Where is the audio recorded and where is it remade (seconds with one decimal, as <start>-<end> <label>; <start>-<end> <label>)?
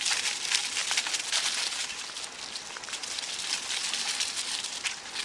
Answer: 0.0-5.2 recorded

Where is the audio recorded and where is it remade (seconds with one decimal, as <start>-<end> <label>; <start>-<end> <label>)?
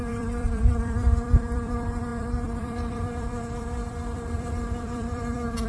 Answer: 0.0-5.7 remade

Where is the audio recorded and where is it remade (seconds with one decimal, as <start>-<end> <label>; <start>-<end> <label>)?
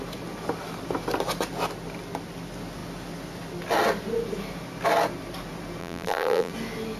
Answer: 0.0-5.8 recorded; 5.8-6.5 remade; 6.5-7.0 recorded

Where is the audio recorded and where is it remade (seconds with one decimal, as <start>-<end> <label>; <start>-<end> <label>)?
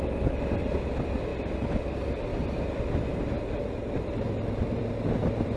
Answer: 0.0-2.3 recorded; 2.3-5.6 remade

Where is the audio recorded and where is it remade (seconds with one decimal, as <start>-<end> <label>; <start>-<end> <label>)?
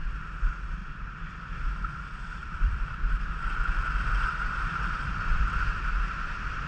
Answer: 0.0-0.8 recorded; 0.8-1.9 remade; 1.9-2.4 recorded; 2.4-6.7 remade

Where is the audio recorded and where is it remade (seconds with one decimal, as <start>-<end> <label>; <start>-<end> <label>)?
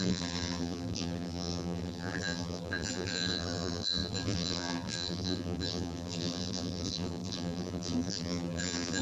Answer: 0.0-9.0 remade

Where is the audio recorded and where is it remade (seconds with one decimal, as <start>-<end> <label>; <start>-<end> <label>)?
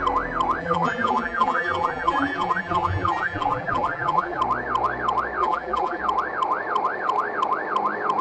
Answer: 0.0-0.6 recorded; 0.6-4.4 remade; 4.4-5.4 recorded; 5.4-6.0 remade; 6.0-8.2 recorded